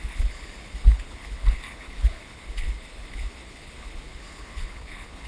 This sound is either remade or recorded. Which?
remade